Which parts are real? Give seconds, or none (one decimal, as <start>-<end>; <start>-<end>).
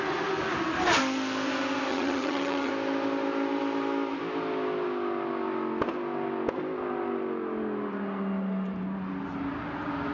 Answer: 0.0-1.9; 2.7-10.1